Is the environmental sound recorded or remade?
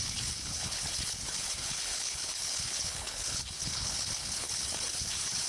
remade